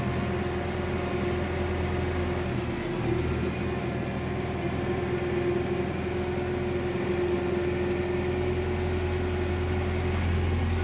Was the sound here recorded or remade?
recorded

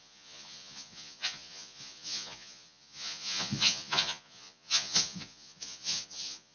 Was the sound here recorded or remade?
remade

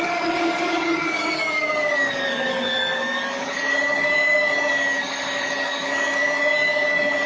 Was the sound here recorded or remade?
remade